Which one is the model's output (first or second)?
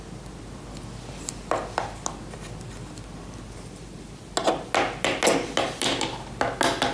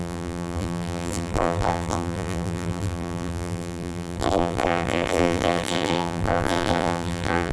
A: second